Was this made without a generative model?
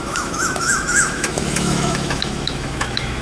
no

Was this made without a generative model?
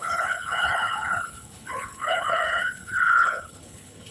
no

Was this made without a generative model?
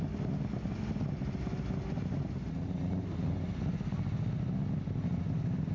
yes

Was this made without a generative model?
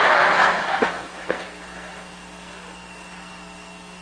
no